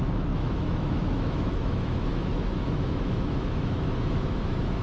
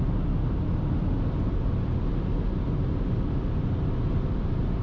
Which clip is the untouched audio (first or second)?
second